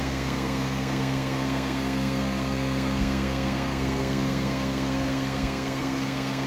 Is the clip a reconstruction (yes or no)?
yes